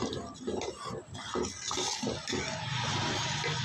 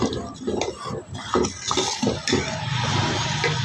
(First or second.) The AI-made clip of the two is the second